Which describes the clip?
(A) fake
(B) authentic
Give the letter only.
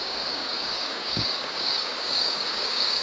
A